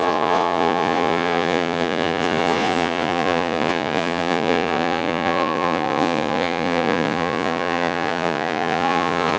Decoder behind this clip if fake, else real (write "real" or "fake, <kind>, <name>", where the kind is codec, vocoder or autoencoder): fake, vocoder, Vocos